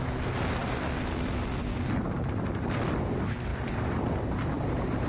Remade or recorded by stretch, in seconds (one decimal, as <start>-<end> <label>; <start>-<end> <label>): 0.0-3.5 recorded; 3.5-5.1 remade